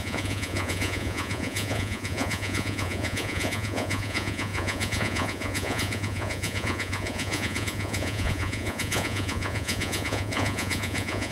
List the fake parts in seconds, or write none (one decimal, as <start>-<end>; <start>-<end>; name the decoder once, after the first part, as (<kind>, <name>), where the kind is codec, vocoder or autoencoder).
0.0-11.3 (vocoder, Vocos)